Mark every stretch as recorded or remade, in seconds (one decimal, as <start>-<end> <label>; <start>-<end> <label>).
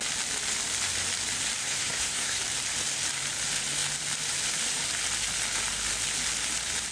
0.0-1.6 recorded; 1.6-2.4 remade; 2.4-6.9 recorded